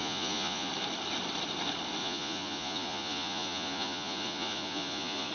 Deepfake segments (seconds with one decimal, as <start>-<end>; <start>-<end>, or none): 0.0-0.7; 2.0-5.3